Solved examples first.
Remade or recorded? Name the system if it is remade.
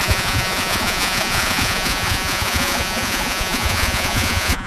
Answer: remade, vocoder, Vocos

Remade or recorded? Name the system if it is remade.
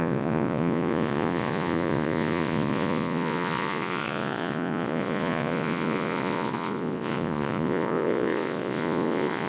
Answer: remade, vocoder, Vocos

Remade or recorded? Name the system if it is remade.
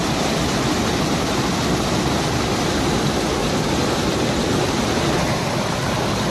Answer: recorded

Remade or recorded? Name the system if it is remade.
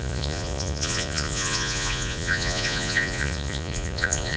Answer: remade, vocoder, Vocos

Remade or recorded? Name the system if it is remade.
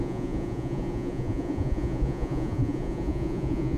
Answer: remade, vocoder, Vocos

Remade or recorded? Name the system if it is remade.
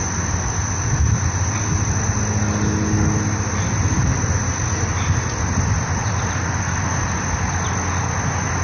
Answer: recorded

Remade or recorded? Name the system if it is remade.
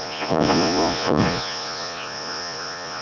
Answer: remade, vocoder, Vocos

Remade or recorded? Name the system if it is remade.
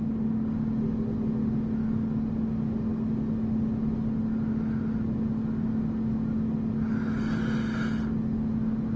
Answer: recorded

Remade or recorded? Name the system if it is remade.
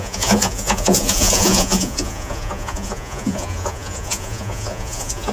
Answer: remade, vocoder, Vocos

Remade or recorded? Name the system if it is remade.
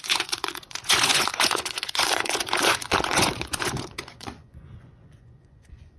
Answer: remade, vocoder, Vocos